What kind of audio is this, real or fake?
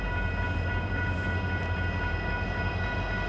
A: real